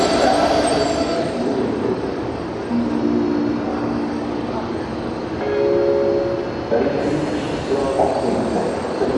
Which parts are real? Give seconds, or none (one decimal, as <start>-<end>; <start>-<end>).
0.0-1.0; 3.0-3.7; 5.4-7.8